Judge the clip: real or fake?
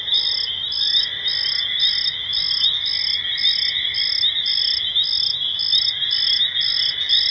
real